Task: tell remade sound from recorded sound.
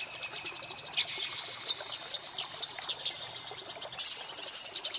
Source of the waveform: recorded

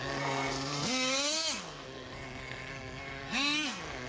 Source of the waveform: remade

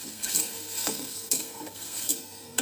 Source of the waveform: remade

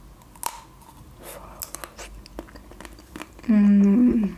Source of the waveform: recorded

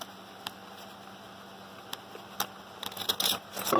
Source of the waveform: recorded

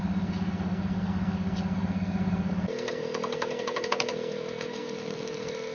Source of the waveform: remade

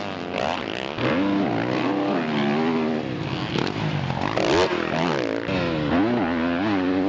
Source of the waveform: recorded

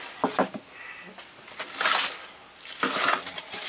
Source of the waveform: recorded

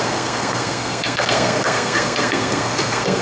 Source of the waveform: remade